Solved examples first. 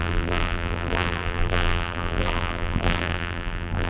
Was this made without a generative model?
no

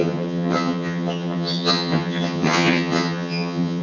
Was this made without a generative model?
no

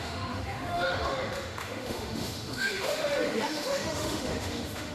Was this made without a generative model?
no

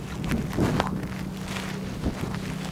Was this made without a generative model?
yes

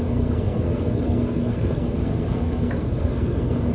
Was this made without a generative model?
no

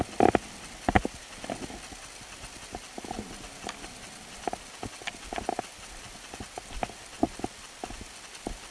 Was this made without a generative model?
yes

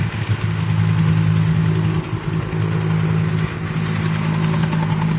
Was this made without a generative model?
yes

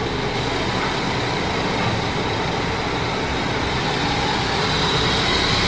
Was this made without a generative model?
yes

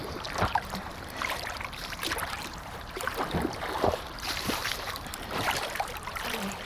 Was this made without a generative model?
no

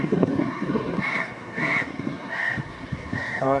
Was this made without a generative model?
no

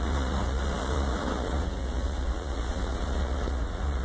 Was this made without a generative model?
no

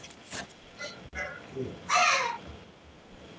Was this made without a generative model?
yes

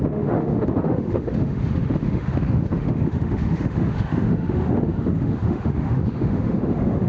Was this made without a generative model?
no